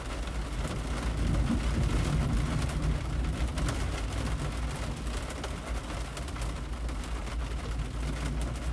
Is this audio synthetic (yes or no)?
no